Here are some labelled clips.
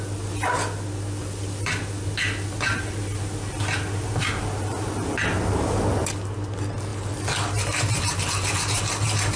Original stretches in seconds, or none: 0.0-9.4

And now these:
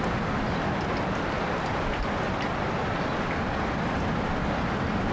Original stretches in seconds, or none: 0.0-1.7; 2.8-4.4

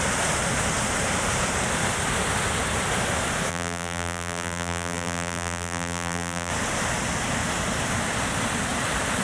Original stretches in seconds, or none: 0.0-3.5; 6.5-9.2

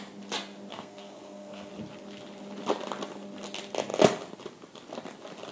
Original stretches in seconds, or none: 0.0-0.7; 1.7-5.5

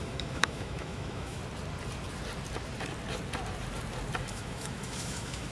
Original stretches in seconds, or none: 1.4-4.3

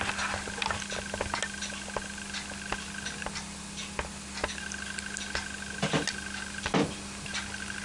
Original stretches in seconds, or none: 0.0-7.8

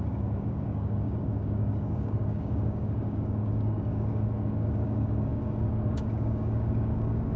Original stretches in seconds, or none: none